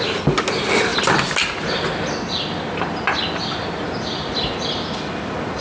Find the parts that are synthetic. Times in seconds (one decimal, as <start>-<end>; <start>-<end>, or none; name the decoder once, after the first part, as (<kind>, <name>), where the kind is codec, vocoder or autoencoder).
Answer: none